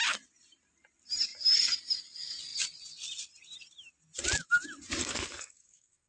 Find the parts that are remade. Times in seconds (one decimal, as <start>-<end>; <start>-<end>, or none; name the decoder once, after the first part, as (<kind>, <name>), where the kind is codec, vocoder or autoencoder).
5.0-6.1 (codec, SNAC)